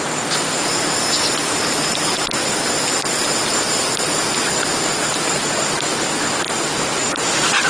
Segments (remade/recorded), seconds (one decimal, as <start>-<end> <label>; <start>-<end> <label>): 0.0-6.9 recorded; 6.9-7.7 remade